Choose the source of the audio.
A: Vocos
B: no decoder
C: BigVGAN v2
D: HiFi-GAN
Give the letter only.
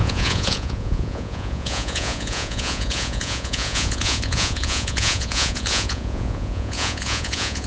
A